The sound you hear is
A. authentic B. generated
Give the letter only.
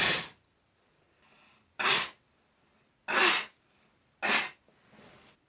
A